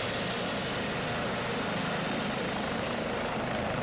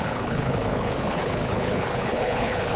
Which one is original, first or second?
first